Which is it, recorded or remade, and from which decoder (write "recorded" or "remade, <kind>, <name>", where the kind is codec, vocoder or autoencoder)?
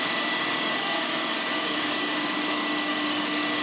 remade, codec, DAC